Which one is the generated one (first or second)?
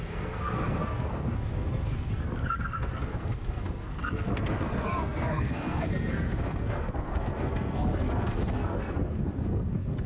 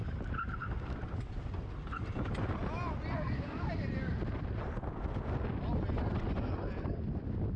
first